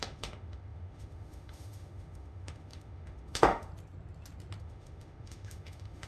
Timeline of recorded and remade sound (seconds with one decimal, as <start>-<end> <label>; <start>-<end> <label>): 0.0-3.7 remade; 3.7-4.6 recorded; 4.6-6.1 remade